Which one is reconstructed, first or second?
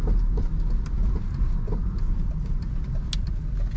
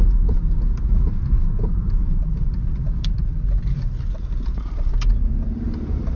second